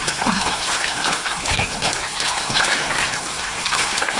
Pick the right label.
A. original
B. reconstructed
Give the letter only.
B